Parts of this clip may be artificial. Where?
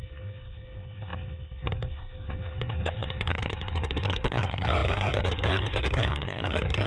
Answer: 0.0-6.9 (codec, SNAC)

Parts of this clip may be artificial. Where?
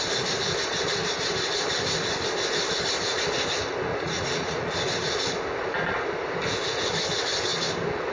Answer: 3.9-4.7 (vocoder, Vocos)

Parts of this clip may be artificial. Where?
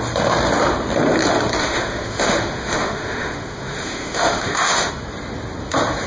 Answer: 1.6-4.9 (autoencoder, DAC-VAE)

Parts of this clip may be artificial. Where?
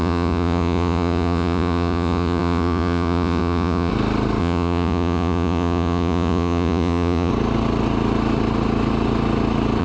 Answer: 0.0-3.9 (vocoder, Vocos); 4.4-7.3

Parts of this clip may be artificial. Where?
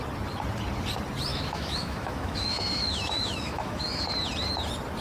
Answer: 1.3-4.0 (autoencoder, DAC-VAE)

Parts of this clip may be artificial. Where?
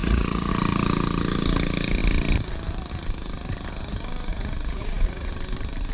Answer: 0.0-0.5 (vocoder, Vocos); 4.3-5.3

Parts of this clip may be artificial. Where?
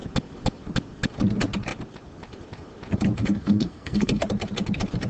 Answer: 3.2-4.2 (codec, SNAC)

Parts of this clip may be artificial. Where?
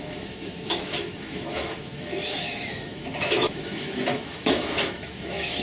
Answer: 0.0-5.6 (autoencoder, DAC-VAE)